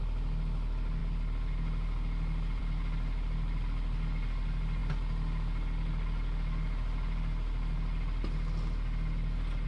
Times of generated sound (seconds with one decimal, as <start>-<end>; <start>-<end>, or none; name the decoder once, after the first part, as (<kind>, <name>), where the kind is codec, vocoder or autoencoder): none